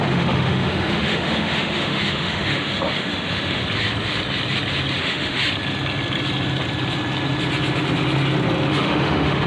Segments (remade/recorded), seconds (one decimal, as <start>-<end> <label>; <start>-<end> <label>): 0.0-3.6 remade; 3.6-5.0 recorded; 5.0-5.4 remade; 5.4-8.7 recorded; 8.7-9.5 remade